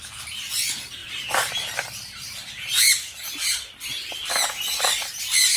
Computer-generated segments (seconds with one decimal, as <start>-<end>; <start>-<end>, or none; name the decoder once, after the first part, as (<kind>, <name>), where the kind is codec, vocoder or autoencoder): 1.0-3.7 (vocoder, BigVGAN v2)